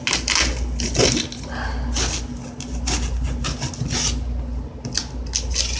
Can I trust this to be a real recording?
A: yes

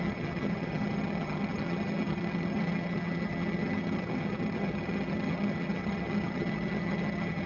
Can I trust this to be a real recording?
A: no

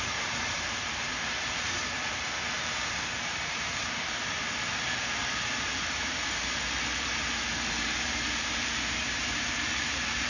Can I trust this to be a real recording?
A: no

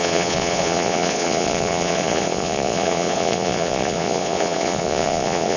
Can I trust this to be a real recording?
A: no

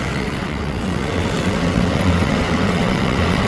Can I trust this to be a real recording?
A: no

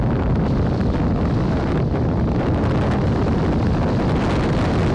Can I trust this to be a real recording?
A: yes